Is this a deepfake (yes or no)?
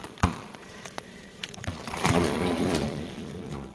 yes